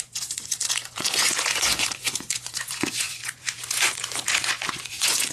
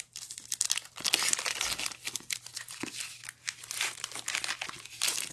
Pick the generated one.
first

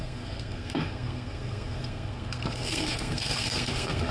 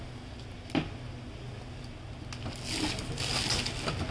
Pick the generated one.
first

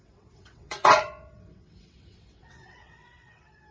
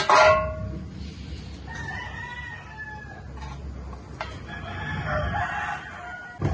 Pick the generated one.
first